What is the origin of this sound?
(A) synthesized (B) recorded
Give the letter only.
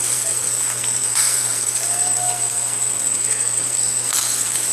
A